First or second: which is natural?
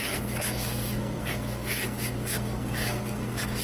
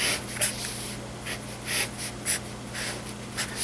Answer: second